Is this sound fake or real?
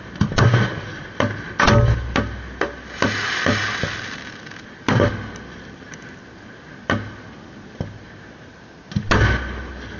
real